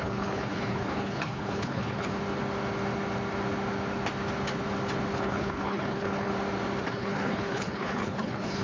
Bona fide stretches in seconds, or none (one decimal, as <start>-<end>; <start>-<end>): 2.1-5.1; 6.3-6.9

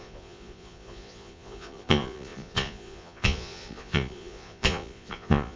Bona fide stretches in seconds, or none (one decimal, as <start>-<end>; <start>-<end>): none

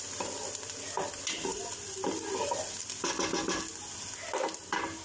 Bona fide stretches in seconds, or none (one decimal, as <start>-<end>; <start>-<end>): 0.0-5.0

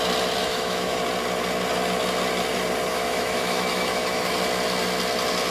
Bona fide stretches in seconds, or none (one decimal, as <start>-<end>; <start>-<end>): 0.0-0.4; 1.0-2.9; 4.3-5.5

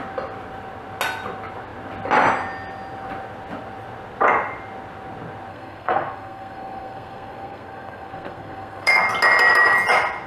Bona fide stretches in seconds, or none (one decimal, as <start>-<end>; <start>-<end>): 0.0-5.5; 9.0-10.3

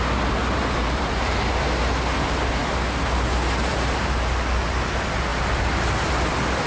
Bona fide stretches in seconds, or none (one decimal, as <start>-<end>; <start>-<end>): 0.0-0.4; 1.1-6.7

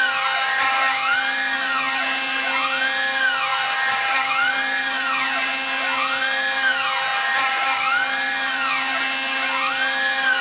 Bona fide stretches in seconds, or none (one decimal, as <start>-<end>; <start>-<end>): 0.0-10.4

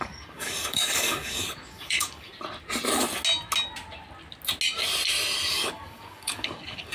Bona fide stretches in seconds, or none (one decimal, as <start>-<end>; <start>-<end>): 2.3-5.5